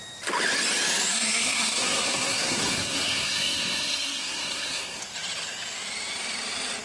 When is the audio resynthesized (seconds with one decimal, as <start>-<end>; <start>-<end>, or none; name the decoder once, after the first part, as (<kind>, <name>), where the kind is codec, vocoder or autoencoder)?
1.1-5.0 (codec, SNAC)